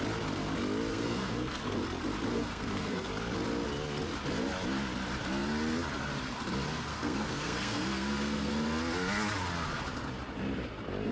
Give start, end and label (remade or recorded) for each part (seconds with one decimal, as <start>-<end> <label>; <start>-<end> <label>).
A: 0.0-0.9 recorded; 0.9-1.8 remade; 1.8-2.3 recorded; 2.3-3.1 remade; 3.1-6.9 recorded; 6.9-8.5 remade; 8.5-11.1 recorded